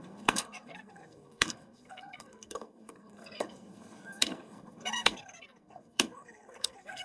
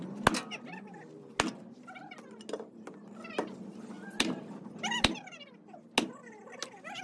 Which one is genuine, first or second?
second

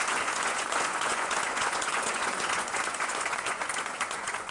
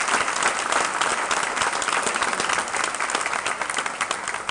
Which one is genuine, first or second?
second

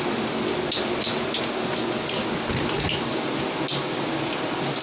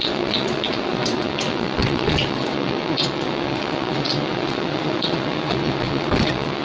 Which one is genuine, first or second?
first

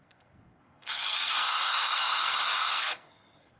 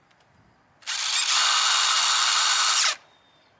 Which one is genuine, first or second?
second